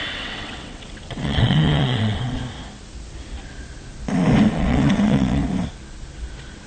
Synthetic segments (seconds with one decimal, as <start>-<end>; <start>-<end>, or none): 0.0-2.4; 4.5-5.4